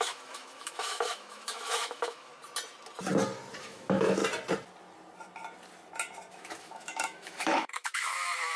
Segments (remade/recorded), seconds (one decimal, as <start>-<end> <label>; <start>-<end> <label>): 0.0-2.3 remade; 2.3-3.6 recorded; 3.6-4.2 remade; 4.2-6.3 recorded; 6.3-8.6 remade